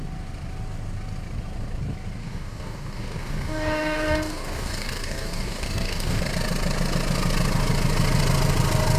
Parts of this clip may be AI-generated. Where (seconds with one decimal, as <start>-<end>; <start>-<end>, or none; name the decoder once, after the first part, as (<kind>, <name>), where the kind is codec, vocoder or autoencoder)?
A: 2.2-6.2 (codec, DAC)